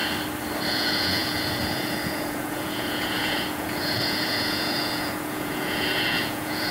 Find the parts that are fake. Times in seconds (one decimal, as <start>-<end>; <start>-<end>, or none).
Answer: 0.7-6.7